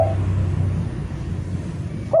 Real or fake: real